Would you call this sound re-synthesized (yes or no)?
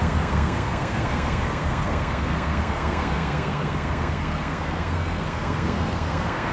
yes